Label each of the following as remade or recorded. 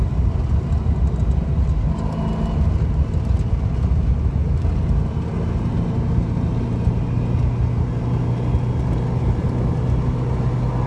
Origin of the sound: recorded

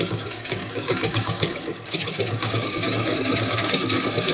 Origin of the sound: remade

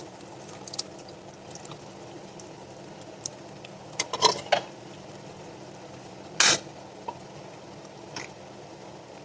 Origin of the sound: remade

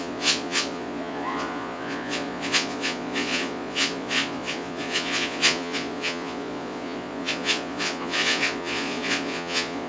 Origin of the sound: remade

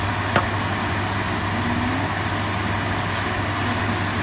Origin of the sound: recorded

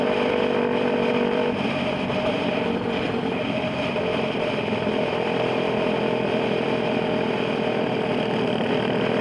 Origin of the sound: remade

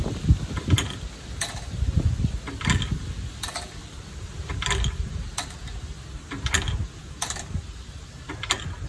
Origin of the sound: recorded